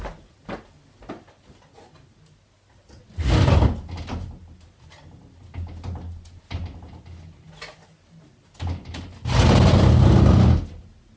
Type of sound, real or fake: real